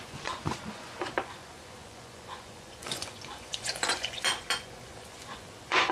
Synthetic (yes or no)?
yes